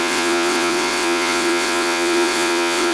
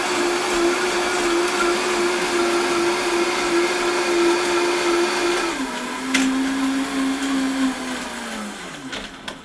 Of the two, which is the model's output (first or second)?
first